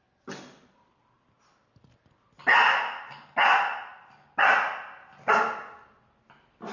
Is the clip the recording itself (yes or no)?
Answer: yes